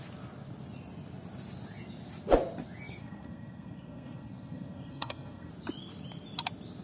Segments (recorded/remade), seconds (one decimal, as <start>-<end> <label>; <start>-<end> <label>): 0.0-3.0 recorded; 3.0-5.5 remade; 5.5-6.8 recorded

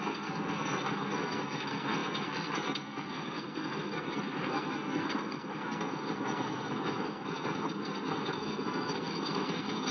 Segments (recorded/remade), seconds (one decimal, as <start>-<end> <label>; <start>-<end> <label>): 0.0-9.9 remade

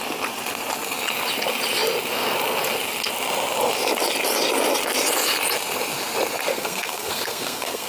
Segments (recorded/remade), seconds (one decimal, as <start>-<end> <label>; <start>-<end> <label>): 0.0-6.5 recorded; 6.5-7.9 remade

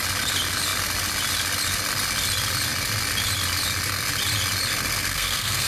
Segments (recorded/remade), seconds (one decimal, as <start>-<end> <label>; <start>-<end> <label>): 0.0-5.1 recorded; 5.1-5.7 remade

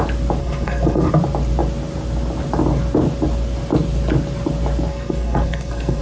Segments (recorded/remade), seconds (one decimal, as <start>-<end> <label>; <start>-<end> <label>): 0.0-0.4 recorded; 0.4-1.1 remade; 1.1-4.9 recorded; 4.9-6.0 remade

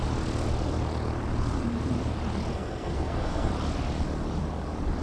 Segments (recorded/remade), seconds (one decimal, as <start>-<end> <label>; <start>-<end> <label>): 0.0-2.5 recorded; 2.5-3.5 remade; 3.5-5.0 recorded